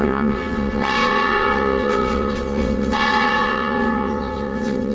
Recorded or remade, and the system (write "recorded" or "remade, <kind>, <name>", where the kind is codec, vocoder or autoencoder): remade, vocoder, WaveNeXt